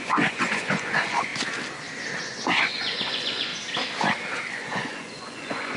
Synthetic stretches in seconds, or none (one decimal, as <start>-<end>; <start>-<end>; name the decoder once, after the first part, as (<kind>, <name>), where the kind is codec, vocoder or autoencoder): 0.0-1.3 (vocoder, Vocos); 2.2-3.5; 4.5-5.8